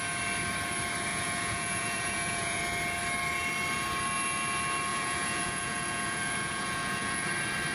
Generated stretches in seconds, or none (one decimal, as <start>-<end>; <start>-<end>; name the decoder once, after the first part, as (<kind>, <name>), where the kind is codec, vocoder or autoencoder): 1.1-2.6 (vocoder, Vocos); 4.9-7.3